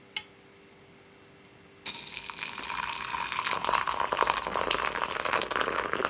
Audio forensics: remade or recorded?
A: recorded